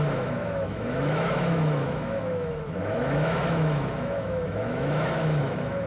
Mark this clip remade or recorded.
remade